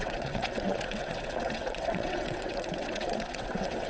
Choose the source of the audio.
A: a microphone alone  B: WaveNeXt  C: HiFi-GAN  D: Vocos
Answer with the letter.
B